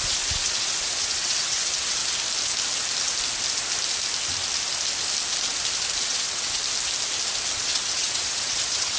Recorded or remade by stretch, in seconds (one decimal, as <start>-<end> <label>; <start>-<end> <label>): 0.0-2.0 remade; 2.0-6.0 recorded; 6.0-6.6 remade; 6.6-7.6 recorded; 7.6-9.0 remade